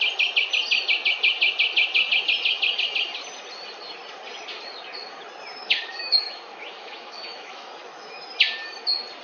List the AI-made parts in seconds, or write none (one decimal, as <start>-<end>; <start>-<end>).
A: 5.6-8.1